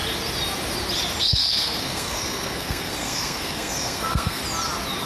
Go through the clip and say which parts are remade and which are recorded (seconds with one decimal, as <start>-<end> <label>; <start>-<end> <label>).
0.0-1.2 recorded; 1.2-4.4 remade; 4.4-5.1 recorded

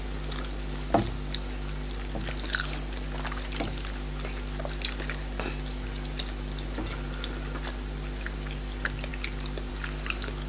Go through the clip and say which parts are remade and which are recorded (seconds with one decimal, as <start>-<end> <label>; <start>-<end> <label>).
0.0-10.5 recorded

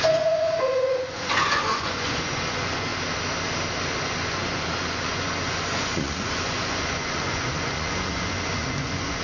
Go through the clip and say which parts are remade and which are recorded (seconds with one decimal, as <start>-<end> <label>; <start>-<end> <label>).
0.0-2.9 remade; 2.9-4.0 recorded; 4.0-9.2 remade